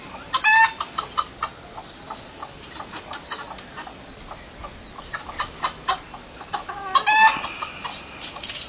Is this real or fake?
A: real